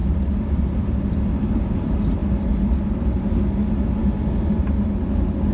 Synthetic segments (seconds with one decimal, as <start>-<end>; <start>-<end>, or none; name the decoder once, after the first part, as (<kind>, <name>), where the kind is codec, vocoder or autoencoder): 0.0-0.9 (vocoder, BigVGAN v2)